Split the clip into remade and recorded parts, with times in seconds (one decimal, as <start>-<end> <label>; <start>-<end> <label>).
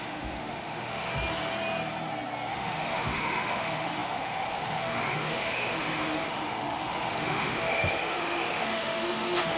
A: 0.0-1.1 remade; 1.1-2.5 recorded; 2.5-9.6 remade